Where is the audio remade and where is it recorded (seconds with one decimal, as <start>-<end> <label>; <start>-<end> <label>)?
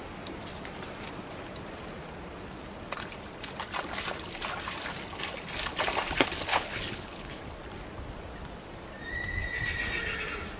0.0-6.5 recorded; 6.5-7.4 remade; 7.4-10.6 recorded